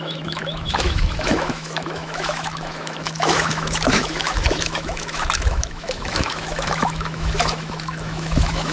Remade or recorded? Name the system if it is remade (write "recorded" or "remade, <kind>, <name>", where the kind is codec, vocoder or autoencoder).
remade, autoencoder, DAC-VAE